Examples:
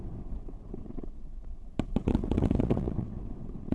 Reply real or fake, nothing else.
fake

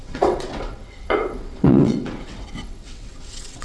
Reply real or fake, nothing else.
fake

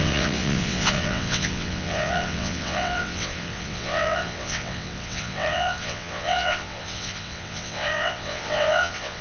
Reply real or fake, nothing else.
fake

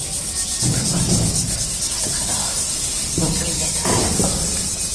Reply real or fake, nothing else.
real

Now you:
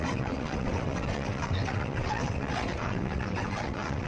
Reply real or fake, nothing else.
fake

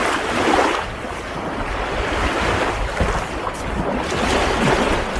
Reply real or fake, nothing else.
real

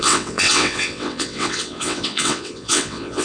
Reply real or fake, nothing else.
fake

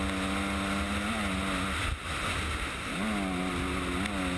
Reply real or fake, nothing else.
real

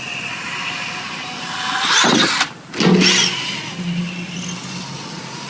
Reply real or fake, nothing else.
real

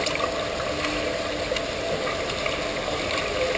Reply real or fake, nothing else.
real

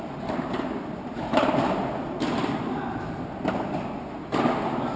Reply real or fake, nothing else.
real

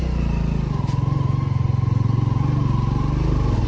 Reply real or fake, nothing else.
real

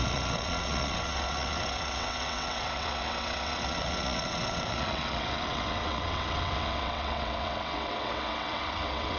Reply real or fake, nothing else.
fake